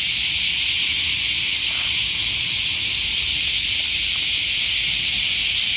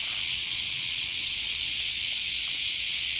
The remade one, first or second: second